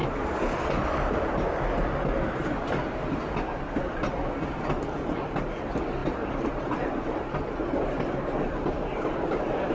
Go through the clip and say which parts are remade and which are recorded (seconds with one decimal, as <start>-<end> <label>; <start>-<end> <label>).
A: 0.0-9.7 recorded